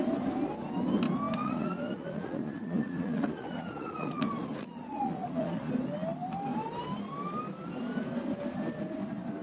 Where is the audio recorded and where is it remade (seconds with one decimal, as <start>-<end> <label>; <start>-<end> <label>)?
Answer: 0.0-1.4 recorded; 1.4-5.7 remade; 5.7-9.4 recorded